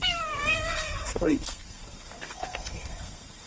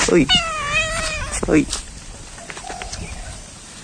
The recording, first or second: second